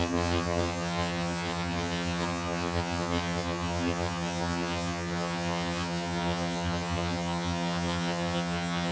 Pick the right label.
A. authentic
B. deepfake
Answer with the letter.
B